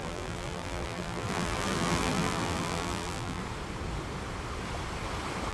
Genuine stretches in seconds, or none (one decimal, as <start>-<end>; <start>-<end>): 3.4-5.5